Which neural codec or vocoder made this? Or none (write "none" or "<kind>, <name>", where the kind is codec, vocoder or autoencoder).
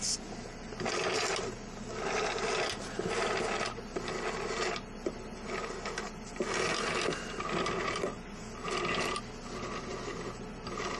none